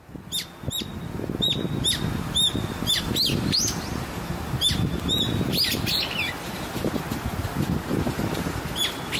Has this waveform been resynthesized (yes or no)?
no